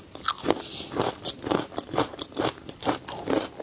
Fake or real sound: real